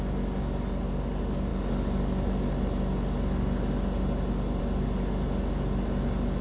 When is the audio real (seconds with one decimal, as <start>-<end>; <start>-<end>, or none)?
0.0-6.4